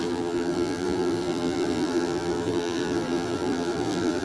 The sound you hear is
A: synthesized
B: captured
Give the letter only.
A